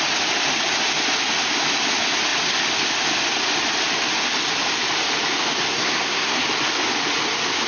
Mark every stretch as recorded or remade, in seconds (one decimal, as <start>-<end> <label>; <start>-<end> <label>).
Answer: 0.0-5.7 recorded; 5.7-6.4 remade; 6.4-7.7 recorded